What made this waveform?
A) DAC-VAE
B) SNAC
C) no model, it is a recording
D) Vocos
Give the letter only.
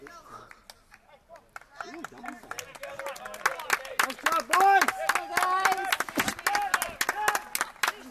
C